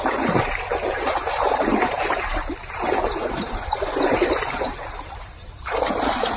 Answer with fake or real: fake